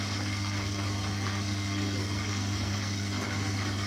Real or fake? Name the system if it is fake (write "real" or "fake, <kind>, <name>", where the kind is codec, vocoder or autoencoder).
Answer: fake, codec, SNAC